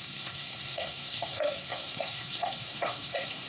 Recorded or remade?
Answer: remade